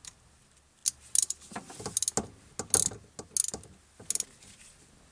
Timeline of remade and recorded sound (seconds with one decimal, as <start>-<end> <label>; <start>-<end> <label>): 0.0-5.1 recorded